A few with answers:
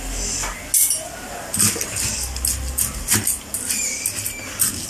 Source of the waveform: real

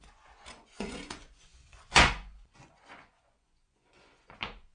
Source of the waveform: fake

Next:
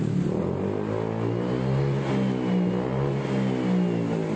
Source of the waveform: real